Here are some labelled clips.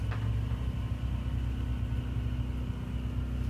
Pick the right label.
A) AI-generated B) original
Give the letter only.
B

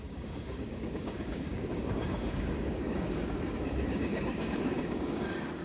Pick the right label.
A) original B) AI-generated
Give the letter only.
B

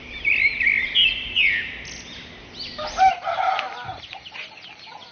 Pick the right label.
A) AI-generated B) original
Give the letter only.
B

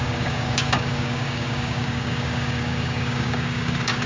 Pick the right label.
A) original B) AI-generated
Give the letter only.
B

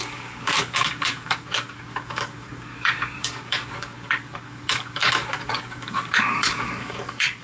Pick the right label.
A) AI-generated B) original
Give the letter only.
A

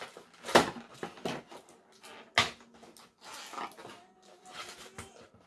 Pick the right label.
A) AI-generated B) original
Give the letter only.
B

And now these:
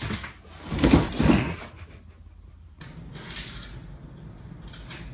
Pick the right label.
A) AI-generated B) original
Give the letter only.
B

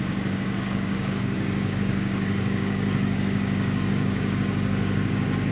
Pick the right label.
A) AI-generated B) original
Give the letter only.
A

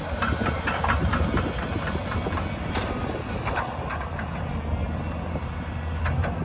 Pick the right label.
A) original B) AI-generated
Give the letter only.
A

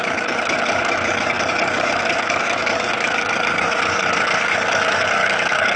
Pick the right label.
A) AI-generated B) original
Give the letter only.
A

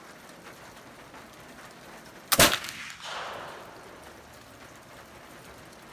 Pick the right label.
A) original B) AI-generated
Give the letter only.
A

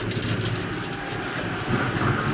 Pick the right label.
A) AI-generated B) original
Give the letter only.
B